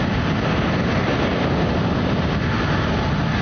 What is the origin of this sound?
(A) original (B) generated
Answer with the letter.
A